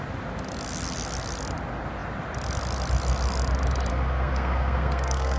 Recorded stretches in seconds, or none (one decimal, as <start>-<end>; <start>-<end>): 0.0-3.9